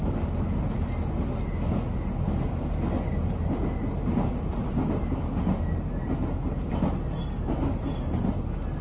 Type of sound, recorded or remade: recorded